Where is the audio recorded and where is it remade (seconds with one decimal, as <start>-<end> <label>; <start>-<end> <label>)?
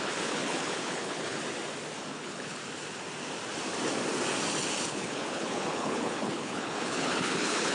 0.0-1.4 remade; 1.4-2.0 recorded; 2.0-2.6 remade; 2.6-4.7 recorded; 4.7-7.7 remade